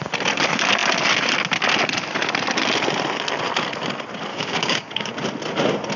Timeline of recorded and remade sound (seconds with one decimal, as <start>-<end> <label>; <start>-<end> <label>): 0.0-4.3 recorded; 4.3-5.1 remade; 5.1-6.0 recorded